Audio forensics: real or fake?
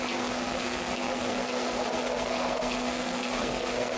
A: fake